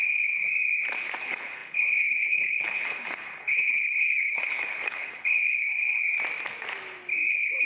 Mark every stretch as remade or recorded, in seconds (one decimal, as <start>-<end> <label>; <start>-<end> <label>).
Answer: 0.0-0.4 remade; 0.4-1.2 recorded; 1.2-6.0 remade; 6.0-7.3 recorded; 7.3-7.7 remade